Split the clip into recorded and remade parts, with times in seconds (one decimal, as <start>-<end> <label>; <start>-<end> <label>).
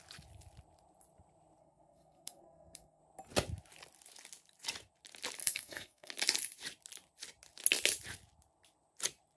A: 0.0-1.6 recorded; 1.6-3.0 remade; 3.0-5.4 recorded; 5.4-6.1 remade; 6.1-9.4 recorded